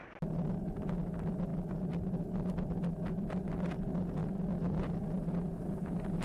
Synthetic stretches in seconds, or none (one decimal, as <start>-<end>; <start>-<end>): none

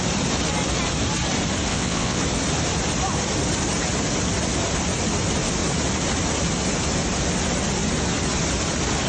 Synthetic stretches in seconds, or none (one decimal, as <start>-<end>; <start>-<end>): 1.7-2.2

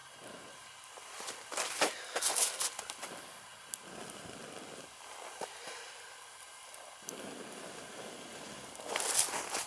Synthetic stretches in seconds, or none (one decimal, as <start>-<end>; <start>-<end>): none

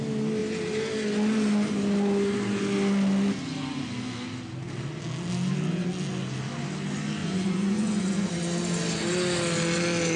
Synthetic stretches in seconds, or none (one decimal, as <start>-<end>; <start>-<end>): 7.2-8.3

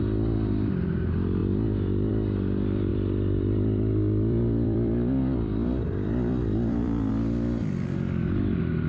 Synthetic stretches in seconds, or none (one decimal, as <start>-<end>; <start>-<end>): 2.9-7.1

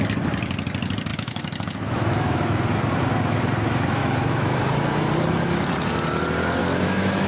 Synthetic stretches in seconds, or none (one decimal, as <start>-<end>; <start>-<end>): 1.1-2.6; 4.0-4.6; 6.6-7.3

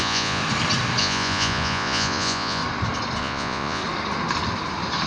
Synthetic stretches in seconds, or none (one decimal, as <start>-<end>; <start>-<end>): 0.0-0.4; 1.0-2.6; 3.2-3.8

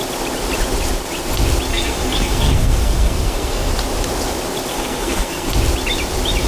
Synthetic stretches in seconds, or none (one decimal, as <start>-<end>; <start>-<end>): 1.7-3.7; 4.7-5.5